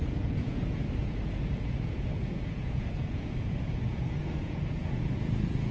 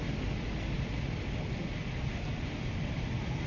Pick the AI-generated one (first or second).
first